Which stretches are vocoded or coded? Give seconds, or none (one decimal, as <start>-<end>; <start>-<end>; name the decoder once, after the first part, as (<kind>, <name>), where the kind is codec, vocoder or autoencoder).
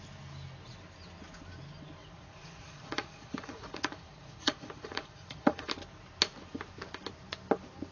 2.0-5.7 (vocoder, Vocos)